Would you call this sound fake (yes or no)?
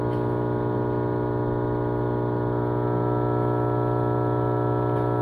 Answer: yes